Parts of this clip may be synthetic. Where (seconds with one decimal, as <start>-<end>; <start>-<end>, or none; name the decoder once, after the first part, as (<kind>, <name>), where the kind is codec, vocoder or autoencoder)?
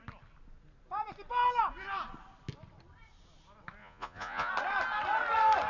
3.8-4.5 (vocoder, Vocos)